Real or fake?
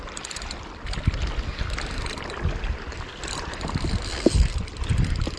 fake